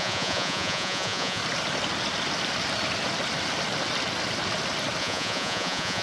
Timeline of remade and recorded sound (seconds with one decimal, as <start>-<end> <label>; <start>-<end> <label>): 0.0-1.4 remade; 1.4-5.0 recorded; 5.0-6.0 remade